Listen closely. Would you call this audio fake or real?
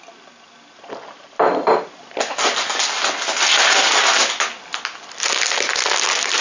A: real